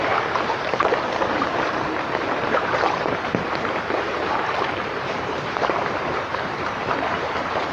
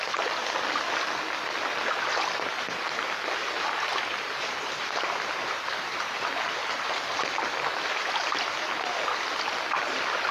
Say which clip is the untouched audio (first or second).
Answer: second